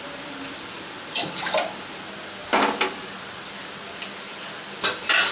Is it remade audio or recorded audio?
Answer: recorded